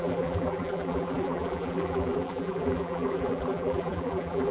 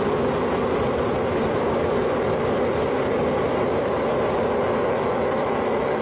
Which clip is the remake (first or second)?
first